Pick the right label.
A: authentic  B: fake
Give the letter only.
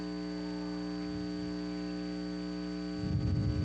A